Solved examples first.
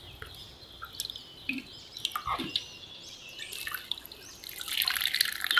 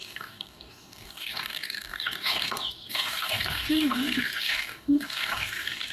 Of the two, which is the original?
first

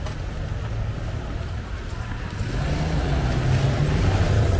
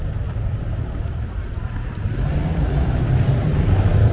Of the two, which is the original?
first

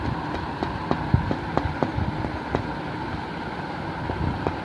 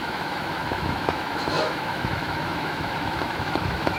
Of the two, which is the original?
first